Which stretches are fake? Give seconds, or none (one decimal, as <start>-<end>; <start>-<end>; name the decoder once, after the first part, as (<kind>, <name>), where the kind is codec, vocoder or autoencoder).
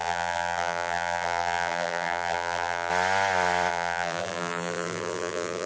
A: 0.0-2.9 (vocoder, BigVGAN v2); 3.7-5.7